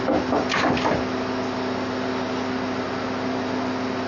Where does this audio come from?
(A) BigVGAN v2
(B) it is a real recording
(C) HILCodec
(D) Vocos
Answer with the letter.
B